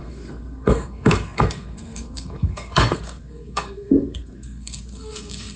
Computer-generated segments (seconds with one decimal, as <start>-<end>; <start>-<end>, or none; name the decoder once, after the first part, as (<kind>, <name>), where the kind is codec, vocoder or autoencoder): 0.0-5.6 (codec, SNAC)